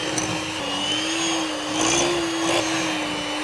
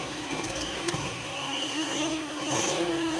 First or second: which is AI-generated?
second